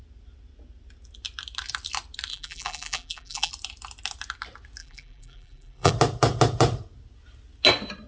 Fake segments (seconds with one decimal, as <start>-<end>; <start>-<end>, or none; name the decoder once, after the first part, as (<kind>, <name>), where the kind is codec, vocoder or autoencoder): 2.3-3.5 (vocoder, BigVGAN v2); 4.8-5.9